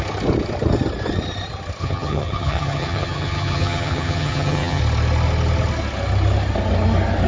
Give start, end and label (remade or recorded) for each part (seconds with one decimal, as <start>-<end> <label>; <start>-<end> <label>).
0.0-1.8 recorded; 1.8-4.8 remade; 4.8-7.3 recorded